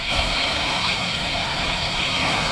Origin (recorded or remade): remade